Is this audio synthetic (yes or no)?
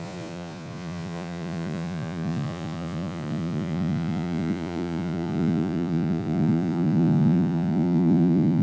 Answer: yes